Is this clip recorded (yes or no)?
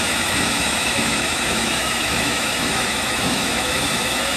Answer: no